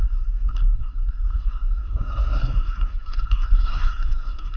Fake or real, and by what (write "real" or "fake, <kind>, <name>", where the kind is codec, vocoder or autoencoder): fake, codec, SNAC